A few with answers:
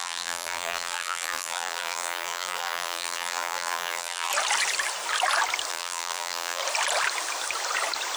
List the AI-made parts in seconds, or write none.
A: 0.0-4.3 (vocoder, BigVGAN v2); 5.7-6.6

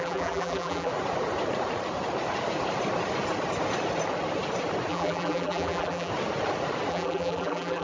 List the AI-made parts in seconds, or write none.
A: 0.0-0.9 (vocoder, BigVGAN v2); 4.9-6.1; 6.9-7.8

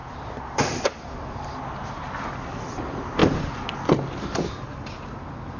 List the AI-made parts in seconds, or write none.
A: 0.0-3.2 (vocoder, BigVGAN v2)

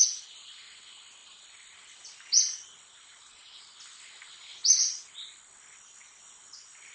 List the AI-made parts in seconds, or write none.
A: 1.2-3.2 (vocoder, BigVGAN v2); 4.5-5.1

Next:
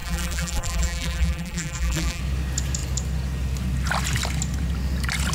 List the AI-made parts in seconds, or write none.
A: 0.0-2.2 (vocoder, BigVGAN v2)

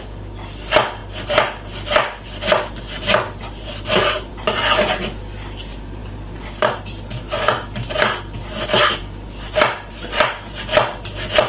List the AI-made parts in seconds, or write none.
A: none